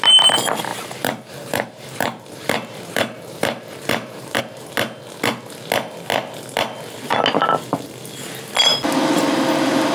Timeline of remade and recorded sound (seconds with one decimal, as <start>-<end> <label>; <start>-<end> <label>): 0.0-0.7 recorded; 0.7-4.4 remade; 4.4-9.9 recorded